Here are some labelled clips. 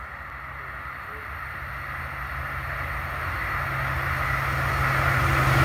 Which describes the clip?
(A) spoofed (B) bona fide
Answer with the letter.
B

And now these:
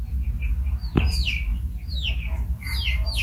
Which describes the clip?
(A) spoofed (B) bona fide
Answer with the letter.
A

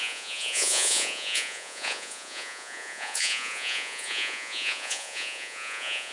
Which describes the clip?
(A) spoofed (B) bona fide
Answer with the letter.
A